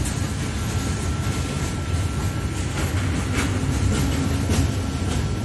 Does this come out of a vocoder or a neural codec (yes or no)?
no